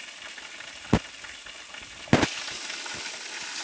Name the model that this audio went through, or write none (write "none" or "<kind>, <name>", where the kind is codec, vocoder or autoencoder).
none